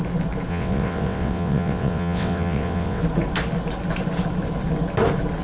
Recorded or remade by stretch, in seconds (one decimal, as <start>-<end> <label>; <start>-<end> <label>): 0.0-0.5 recorded; 0.5-3.0 remade; 3.0-5.4 recorded